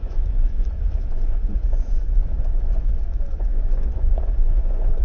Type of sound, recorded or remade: remade